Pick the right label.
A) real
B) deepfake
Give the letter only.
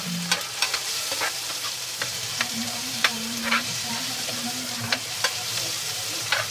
B